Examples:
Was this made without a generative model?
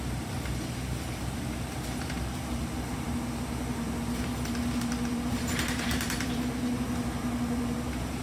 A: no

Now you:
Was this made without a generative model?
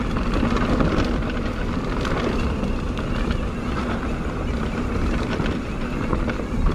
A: yes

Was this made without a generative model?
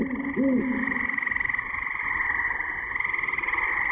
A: yes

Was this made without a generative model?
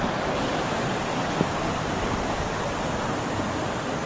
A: yes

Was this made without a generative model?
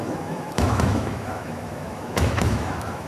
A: no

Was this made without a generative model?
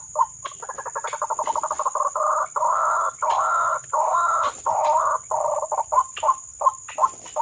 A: yes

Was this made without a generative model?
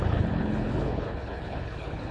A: no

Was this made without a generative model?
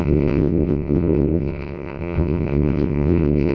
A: no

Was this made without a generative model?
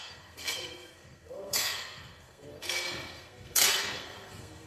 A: no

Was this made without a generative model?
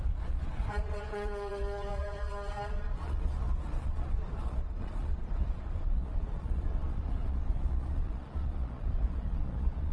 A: no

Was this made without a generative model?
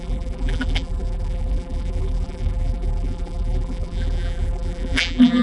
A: no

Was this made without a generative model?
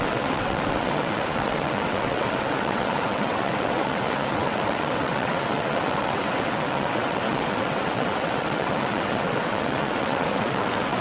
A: no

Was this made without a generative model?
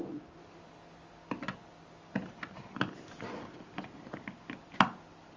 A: yes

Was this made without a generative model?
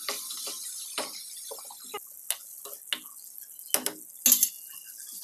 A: yes